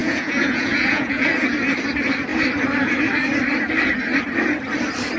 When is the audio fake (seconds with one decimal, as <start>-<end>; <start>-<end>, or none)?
0.0-1.3